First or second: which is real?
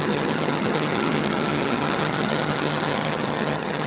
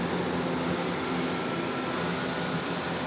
second